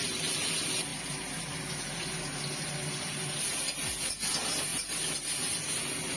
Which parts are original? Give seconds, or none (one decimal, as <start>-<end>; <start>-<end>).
0.0-6.2

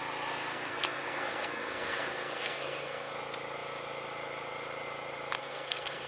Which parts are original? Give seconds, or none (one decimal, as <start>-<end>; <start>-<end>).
0.0-0.5; 3.1-5.4

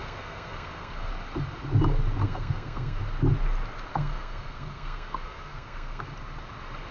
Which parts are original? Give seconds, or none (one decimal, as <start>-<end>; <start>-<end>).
1.1-2.2; 3.0-3.9; 6.0-6.9